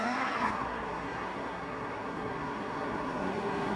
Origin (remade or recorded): remade